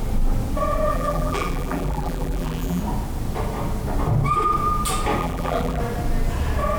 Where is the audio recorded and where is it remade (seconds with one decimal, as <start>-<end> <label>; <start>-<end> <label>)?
0.0-0.9 recorded; 0.9-2.8 remade; 2.8-5.2 recorded; 5.2-5.8 remade; 5.8-6.8 recorded